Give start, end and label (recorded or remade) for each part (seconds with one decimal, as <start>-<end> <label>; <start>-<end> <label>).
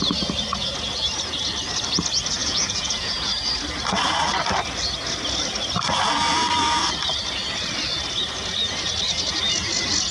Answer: 0.0-2.4 recorded; 2.4-3.3 remade; 3.3-10.1 recorded